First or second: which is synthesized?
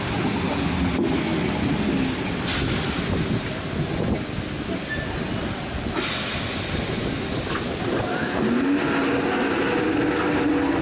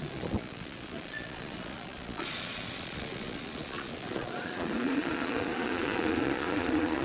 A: second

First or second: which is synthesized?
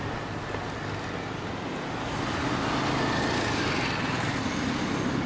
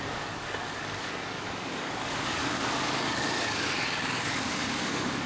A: second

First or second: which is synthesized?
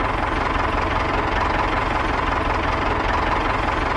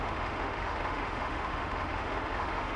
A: second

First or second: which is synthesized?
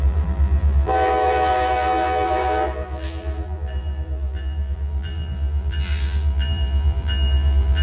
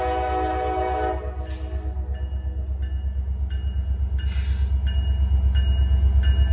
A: first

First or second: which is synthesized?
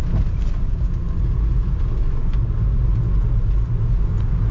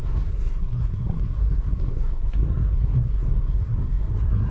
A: second